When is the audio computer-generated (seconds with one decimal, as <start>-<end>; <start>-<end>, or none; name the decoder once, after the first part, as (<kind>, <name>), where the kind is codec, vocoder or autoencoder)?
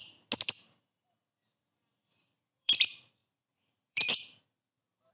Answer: 2.6-5.1 (vocoder, BigVGAN v2)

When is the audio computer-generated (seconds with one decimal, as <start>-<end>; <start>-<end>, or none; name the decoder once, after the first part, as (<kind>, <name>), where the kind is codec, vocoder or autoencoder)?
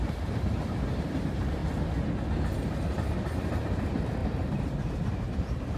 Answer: 0.0-1.6 (vocoder, BigVGAN v2); 3.8-5.8